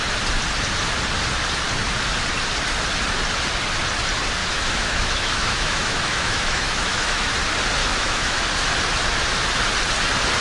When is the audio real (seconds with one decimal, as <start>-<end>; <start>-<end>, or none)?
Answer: 0.0-4.4; 7.3-7.8; 8.4-10.4